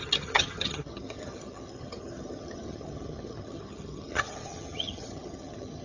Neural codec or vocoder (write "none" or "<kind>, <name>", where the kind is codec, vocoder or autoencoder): vocoder, HiFi-GAN